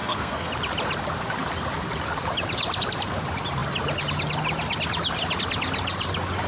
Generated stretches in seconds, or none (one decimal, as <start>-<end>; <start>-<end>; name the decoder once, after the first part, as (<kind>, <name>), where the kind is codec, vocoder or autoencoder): 0.0-0.5 (codec, SNAC)